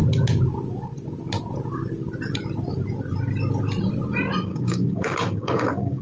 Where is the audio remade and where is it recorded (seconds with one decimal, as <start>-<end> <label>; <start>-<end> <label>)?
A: 0.0-4.5 recorded; 4.5-6.0 remade